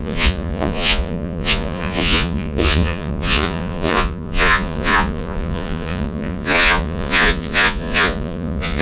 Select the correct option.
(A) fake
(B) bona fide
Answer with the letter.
A